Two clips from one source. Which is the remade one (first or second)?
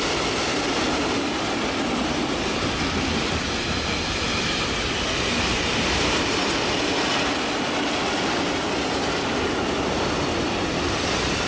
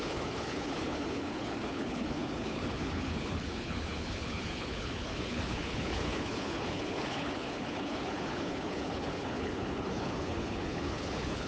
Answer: second